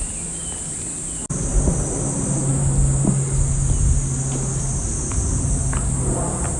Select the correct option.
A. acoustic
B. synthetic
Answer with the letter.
A